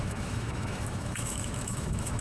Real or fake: fake